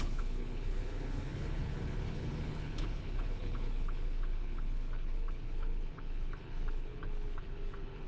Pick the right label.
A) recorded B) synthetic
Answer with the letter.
B